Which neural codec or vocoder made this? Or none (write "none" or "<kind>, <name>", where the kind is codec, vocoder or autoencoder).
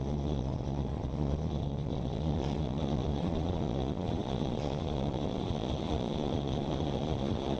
vocoder, Vocos